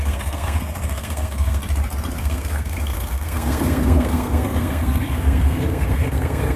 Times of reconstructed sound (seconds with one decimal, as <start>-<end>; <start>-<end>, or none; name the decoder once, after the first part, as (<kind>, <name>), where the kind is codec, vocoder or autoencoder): 0.0-1.6 (codec, SNAC); 2.2-6.6